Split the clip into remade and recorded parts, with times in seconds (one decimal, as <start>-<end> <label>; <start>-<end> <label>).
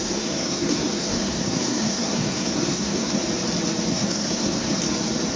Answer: 0.0-3.2 remade; 3.2-3.9 recorded; 3.9-4.8 remade; 4.8-5.4 recorded